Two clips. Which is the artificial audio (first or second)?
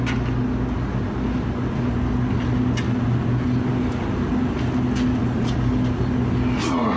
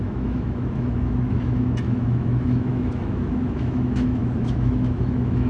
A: second